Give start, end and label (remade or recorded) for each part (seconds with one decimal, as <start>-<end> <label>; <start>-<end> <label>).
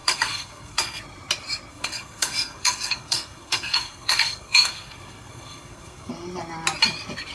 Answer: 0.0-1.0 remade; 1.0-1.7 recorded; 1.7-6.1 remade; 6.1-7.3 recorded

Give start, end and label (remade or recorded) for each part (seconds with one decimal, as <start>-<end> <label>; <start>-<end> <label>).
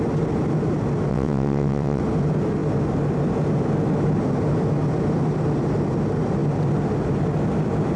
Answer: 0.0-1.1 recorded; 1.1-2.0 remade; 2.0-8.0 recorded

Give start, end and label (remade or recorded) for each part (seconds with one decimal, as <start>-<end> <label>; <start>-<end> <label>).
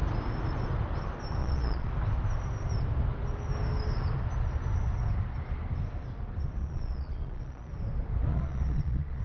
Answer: 0.0-1.4 recorded; 1.4-1.9 remade; 1.9-6.6 recorded; 6.6-7.7 remade; 7.7-8.3 recorded; 8.3-9.2 remade